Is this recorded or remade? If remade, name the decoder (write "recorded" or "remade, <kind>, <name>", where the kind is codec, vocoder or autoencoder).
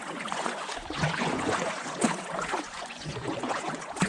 remade, vocoder, Vocos